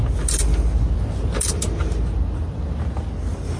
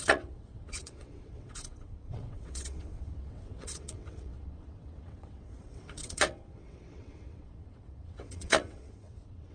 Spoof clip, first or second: second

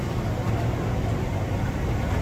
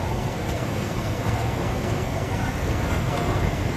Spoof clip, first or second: second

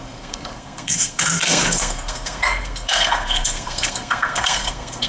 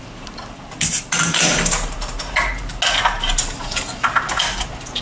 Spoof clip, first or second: first